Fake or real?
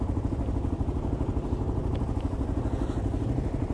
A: real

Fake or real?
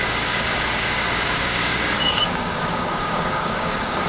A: fake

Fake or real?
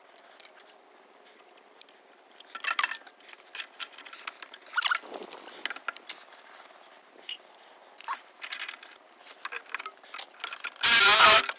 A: real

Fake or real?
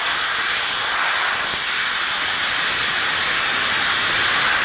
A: real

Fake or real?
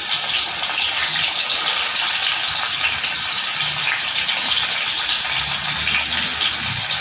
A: real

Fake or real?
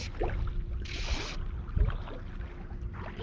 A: real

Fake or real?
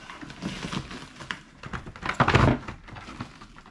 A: real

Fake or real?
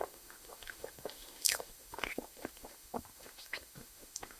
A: fake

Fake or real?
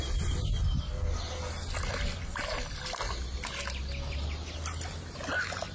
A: real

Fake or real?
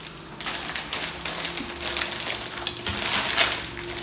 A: real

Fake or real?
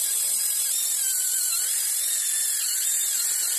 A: real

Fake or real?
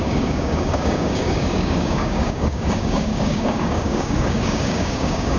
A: fake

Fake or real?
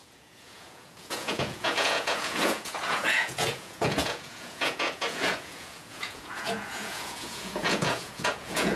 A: fake